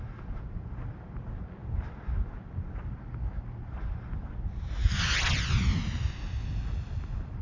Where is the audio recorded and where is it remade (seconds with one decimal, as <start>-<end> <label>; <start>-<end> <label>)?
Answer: 0.0-7.4 recorded